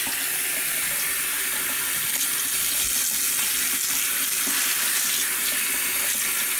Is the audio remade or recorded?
recorded